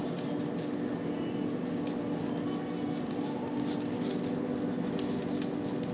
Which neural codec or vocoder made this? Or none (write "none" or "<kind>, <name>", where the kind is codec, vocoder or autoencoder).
none